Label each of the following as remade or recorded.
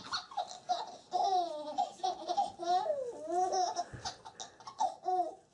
recorded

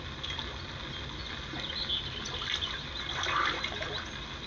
recorded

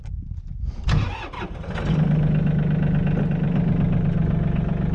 recorded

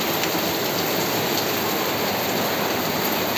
remade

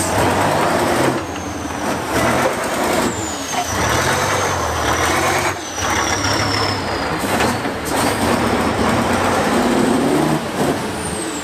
remade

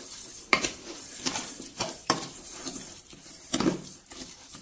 remade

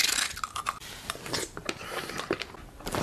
recorded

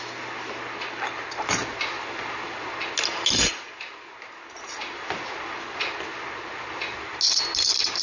recorded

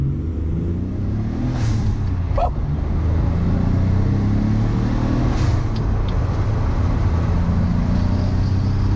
recorded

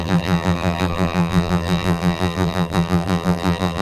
remade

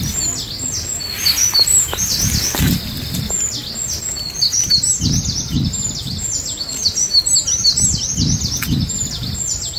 recorded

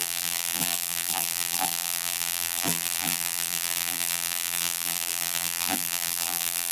remade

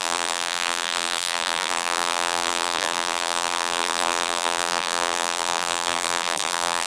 remade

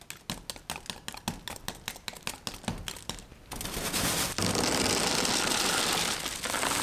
recorded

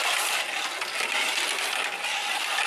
recorded